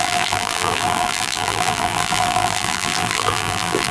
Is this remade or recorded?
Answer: remade